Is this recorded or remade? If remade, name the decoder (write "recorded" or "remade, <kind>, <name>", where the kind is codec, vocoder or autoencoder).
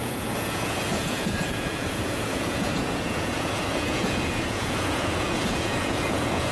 remade, vocoder, Vocos